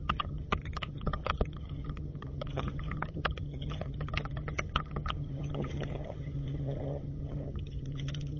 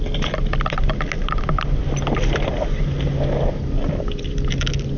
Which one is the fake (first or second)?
first